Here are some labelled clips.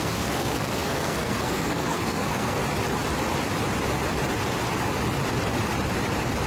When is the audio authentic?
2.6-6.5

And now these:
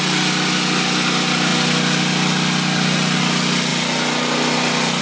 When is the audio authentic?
0.0-5.0

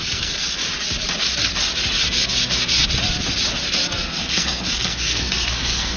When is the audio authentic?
0.6-4.2

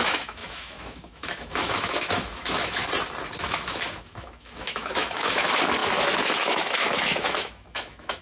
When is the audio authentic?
2.8-3.4

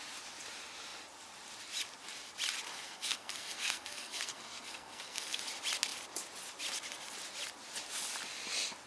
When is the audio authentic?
0.0-2.7; 5.4-8.9

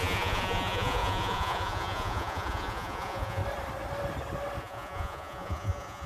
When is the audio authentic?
3.4-4.6

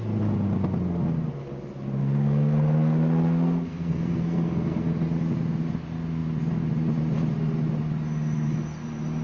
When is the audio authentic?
0.0-2.0; 4.9-9.2

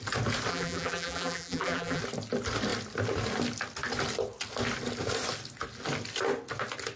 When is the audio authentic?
0.0-0.5; 2.0-7.0